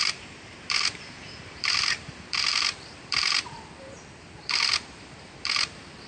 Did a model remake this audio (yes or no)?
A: yes